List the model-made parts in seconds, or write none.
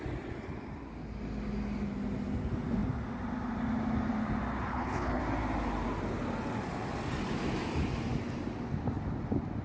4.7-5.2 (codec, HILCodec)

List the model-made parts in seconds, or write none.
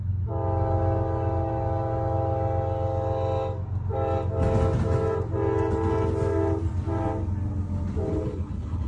8.1-8.9 (codec, HILCodec)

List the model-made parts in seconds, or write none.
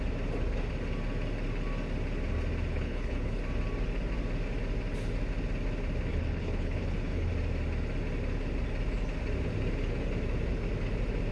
2.7-3.4 (codec, HILCodec); 6.1-7.3